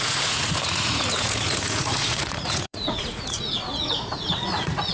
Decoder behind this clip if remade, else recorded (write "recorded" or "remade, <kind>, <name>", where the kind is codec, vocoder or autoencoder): remade, vocoder, Vocos